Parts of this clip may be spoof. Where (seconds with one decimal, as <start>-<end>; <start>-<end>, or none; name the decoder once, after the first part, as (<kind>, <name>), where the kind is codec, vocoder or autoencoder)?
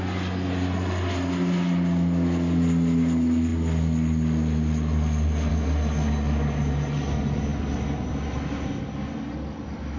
none